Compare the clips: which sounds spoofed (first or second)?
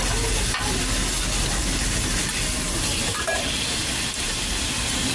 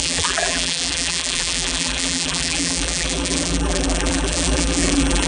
second